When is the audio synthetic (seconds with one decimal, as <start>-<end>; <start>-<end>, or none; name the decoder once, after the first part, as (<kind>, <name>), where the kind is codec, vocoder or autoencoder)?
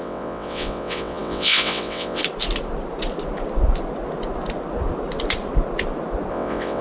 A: 0.0-2.2 (vocoder, WaveNeXt); 6.3-6.8